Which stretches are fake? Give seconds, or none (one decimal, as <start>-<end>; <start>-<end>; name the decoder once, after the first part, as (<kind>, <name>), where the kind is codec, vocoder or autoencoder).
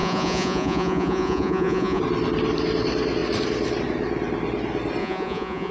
0.0-2.0 (vocoder, Vocos); 5.0-5.7